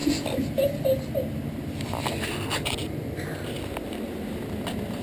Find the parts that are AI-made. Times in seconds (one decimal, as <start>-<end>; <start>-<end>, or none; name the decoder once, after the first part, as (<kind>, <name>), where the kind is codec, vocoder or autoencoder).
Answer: none